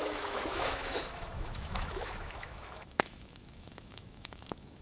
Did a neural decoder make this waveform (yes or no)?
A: yes